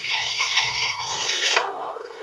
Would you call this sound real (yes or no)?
no